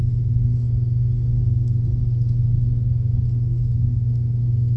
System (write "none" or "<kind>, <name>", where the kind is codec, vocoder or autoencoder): codec, SNAC